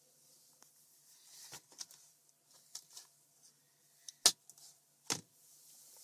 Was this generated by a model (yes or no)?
no